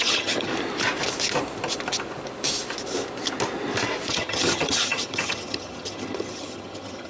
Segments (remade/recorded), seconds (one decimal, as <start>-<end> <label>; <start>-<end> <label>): 0.0-0.5 remade; 0.5-4.1 recorded; 4.1-7.1 remade